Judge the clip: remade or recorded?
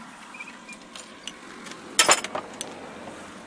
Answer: recorded